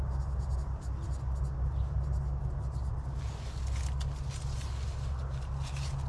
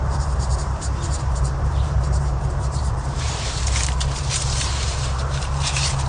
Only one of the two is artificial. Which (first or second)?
second